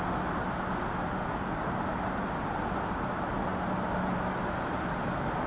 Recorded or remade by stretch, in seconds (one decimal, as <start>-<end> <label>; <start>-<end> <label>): 0.0-5.5 recorded